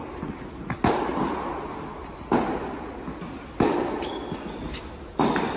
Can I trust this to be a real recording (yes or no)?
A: yes